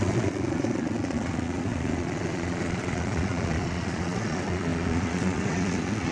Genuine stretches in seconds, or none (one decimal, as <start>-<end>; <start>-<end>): none